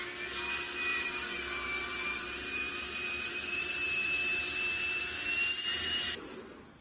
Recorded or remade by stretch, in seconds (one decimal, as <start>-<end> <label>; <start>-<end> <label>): 0.0-0.9 recorded; 0.9-5.0 remade; 5.0-6.8 recorded